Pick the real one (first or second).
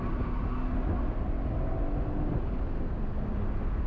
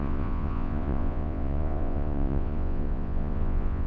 first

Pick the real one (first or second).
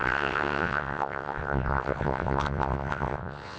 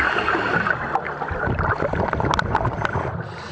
second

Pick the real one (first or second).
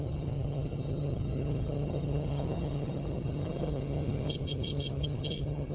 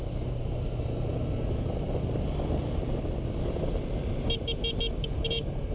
second